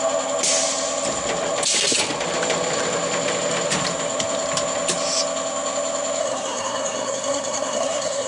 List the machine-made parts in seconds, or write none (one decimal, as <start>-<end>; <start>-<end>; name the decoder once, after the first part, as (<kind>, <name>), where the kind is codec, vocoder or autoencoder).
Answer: 6.2-8.3 (codec, SNAC)